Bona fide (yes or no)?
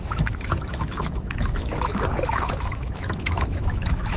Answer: no